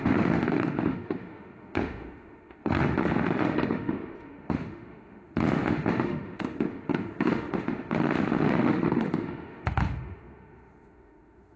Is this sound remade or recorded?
remade